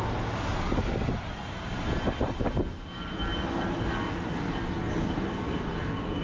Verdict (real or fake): real